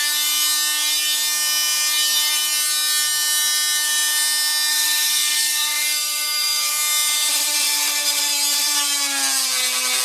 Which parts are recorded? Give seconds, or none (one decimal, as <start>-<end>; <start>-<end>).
0.0-4.7; 6.7-10.0